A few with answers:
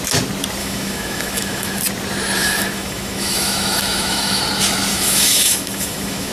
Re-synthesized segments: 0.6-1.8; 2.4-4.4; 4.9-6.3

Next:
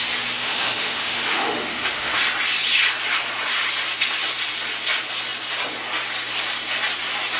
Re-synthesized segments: 0.4-2.2

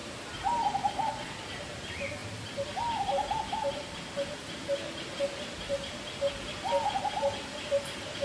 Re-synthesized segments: none

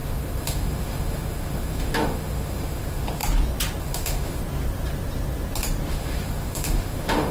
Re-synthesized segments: 0.0-3.2; 3.8-4.4; 5.9-7.3

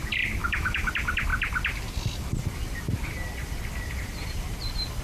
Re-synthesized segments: 0.4-0.9

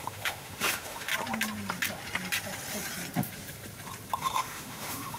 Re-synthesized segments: 0.0-1.1; 4.2-5.2

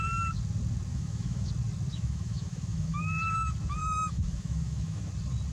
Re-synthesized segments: 0.9-1.5; 1.9-3.0; 3.8-5.1